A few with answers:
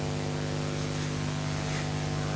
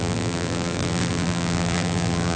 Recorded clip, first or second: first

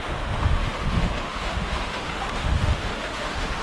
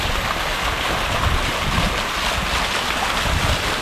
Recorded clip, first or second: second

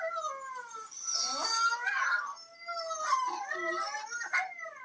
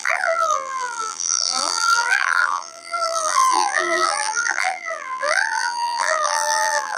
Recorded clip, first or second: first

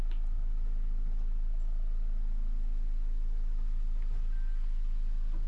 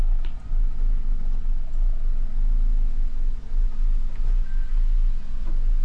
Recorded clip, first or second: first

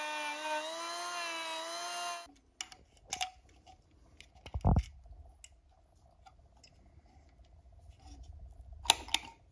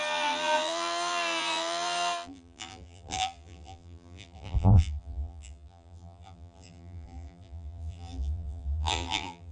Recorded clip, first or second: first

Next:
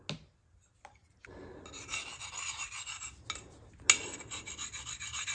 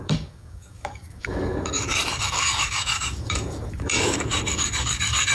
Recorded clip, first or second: first